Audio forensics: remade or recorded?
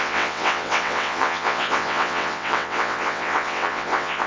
remade